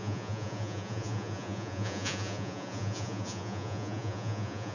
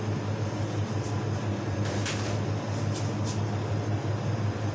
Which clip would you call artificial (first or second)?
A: first